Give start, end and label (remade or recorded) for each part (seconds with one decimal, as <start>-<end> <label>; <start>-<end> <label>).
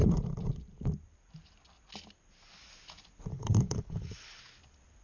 0.0-3.3 recorded; 3.3-4.4 remade; 4.4-5.0 recorded